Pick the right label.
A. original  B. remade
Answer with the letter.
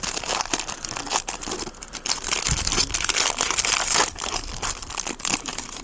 B